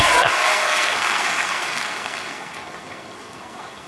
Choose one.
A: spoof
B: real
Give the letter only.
A